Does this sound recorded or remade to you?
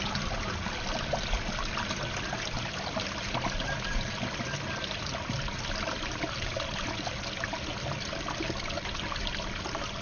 recorded